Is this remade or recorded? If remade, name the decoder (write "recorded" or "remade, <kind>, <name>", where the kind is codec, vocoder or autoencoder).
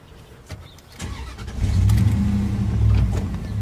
recorded